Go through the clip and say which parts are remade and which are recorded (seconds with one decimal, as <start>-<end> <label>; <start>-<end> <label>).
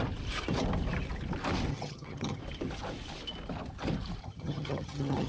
0.0-1.7 recorded; 1.7-2.4 remade; 2.4-4.2 recorded; 4.2-5.3 remade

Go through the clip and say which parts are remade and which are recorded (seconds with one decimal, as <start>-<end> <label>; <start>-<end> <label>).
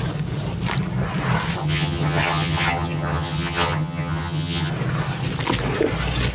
0.0-1.6 recorded; 1.6-4.7 remade; 4.7-6.3 recorded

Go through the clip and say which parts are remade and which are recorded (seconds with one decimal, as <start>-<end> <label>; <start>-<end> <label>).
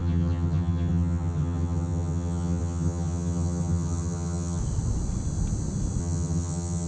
0.0-4.6 remade; 4.6-6.0 recorded; 6.0-6.9 remade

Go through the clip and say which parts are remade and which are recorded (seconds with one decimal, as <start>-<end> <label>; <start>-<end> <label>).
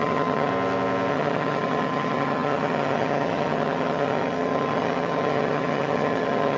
0.0-0.5 remade; 0.5-1.1 recorded; 1.1-6.6 remade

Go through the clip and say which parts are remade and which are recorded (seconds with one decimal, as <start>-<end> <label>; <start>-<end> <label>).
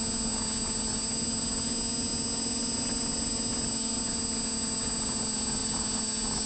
0.0-6.5 recorded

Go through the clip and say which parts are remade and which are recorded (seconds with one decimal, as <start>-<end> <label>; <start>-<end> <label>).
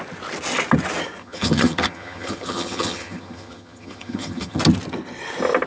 0.0-1.2 recorded; 1.2-4.6 remade; 4.6-5.7 recorded